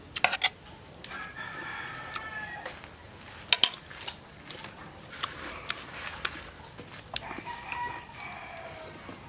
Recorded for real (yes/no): yes